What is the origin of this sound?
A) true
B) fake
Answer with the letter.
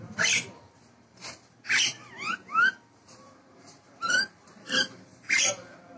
B